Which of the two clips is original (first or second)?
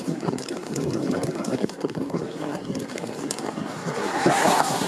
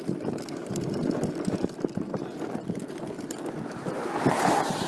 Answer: second